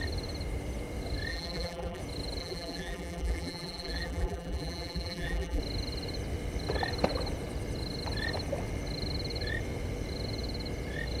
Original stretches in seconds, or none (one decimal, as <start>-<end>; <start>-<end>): 0.0-1.3; 2.0-2.4; 5.6-11.2